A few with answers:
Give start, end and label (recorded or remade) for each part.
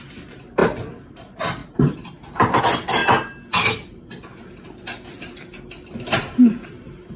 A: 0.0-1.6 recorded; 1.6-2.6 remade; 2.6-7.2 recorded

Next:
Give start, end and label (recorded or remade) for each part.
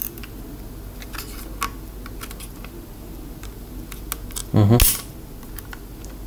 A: 0.0-6.3 recorded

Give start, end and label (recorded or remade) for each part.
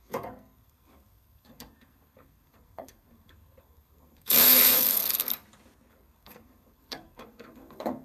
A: 0.0-5.3 remade; 5.3-5.9 recorded; 5.9-8.0 remade